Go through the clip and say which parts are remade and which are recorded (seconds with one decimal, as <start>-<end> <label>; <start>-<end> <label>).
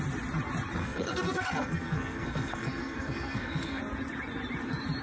0.0-0.8 recorded; 0.8-3.8 remade; 3.8-5.0 recorded